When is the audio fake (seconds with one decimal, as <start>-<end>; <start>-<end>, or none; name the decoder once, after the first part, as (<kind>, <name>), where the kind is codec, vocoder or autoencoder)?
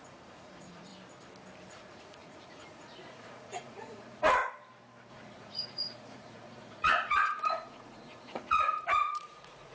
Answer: 0.0-0.9 (vocoder, Vocos); 1.7-4.4; 5.1-9.7